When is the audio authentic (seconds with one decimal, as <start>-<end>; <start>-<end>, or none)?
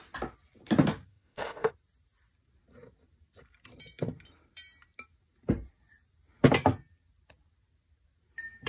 0.0-1.1; 1.7-8.7